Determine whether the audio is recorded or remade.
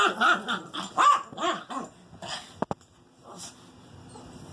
recorded